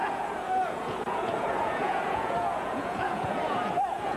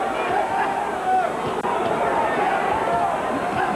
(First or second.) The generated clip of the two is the first